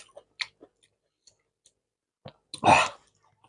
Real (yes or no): yes